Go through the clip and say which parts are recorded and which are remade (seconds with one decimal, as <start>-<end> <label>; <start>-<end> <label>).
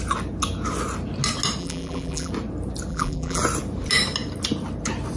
0.0-1.6 recorded; 1.6-2.3 remade; 2.3-2.9 recorded; 2.9-3.4 remade; 3.4-5.2 recorded